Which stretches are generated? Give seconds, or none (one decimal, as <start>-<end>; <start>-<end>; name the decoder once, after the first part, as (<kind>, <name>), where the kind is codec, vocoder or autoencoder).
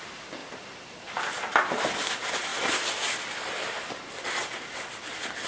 none